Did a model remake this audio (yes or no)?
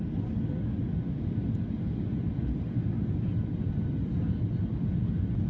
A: no